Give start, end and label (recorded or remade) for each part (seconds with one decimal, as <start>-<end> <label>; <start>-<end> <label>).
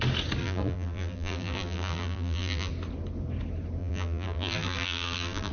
0.0-0.4 recorded; 0.4-2.7 remade; 2.7-3.8 recorded; 3.8-5.5 remade